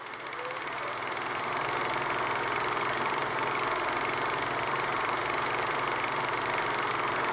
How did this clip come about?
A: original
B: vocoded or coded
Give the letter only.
B